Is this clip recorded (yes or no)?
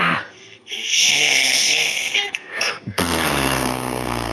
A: no